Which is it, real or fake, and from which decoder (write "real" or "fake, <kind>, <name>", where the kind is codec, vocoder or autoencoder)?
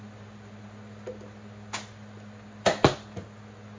real